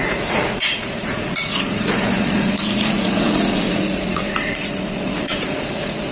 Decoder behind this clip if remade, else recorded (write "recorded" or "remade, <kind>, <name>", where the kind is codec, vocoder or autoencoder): remade, vocoder, Vocos